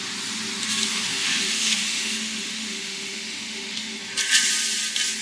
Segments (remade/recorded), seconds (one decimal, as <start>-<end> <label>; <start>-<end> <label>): 0.0-0.9 recorded; 0.9-4.0 remade; 4.0-5.2 recorded